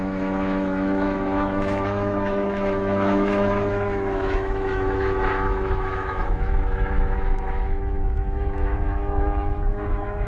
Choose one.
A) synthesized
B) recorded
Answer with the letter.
A